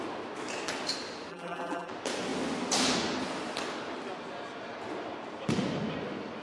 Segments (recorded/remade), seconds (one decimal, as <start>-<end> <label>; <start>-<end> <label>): 0.0-1.3 recorded; 1.3-1.9 remade; 1.9-6.4 recorded